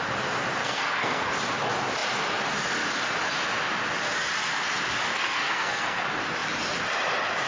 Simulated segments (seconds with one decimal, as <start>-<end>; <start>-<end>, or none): 0.6-1.3; 5.1-6.0